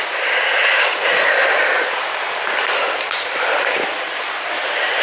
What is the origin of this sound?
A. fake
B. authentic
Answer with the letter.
B